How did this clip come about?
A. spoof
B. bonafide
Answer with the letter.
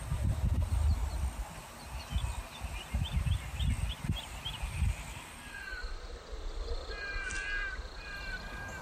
B